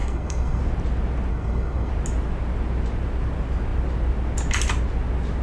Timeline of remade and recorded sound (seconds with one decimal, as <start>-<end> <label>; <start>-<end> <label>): 0.0-0.6 remade; 0.6-1.3 recorded; 1.3-1.9 remade; 1.9-5.4 recorded